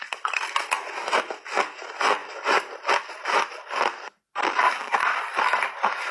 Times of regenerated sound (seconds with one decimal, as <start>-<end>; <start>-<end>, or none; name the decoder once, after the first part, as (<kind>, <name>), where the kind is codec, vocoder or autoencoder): none